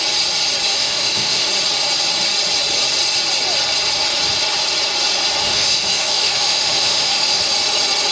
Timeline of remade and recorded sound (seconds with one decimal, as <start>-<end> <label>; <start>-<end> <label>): 0.0-0.7 recorded; 0.7-1.5 remade; 1.5-5.4 recorded; 5.4-7.4 remade; 7.4-8.1 recorded